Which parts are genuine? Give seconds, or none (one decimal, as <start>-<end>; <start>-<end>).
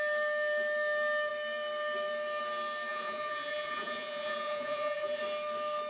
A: 0.0-2.9; 5.2-5.9